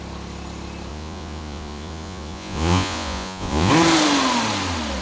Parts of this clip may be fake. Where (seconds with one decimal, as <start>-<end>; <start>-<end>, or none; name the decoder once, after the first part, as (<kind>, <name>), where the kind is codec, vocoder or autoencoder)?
0.9-3.7 (vocoder, Vocos)